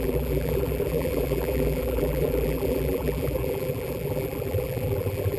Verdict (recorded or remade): remade